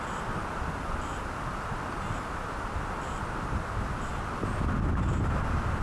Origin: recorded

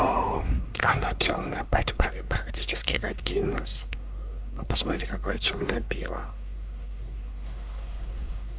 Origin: remade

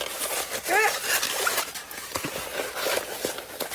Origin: recorded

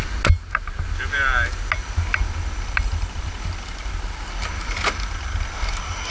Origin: recorded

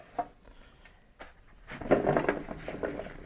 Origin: recorded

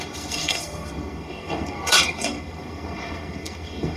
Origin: remade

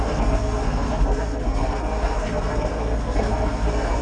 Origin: remade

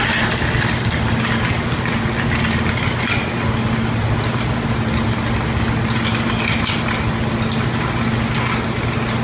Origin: recorded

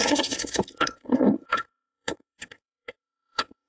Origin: remade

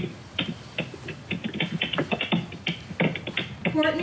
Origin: recorded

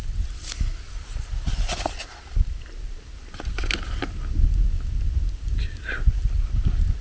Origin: recorded